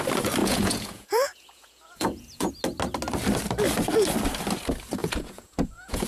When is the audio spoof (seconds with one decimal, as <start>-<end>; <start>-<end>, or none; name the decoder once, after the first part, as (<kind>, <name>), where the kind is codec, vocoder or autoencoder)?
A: 0.4-2.5 (vocoder, Vocos); 5.0-6.1